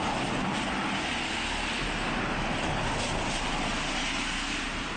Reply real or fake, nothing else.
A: real